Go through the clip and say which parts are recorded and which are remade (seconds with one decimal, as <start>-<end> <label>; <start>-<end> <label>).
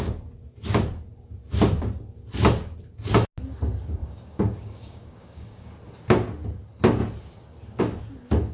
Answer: 0.0-4.0 recorded; 4.0-5.8 remade; 5.8-8.5 recorded